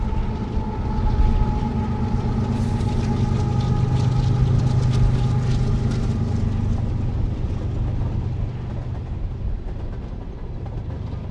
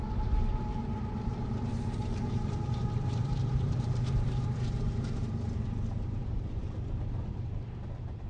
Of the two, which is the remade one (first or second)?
second